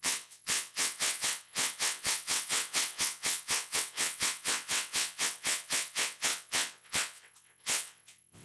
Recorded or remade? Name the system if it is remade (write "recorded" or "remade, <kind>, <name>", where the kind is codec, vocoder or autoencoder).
remade, vocoder, WaveNeXt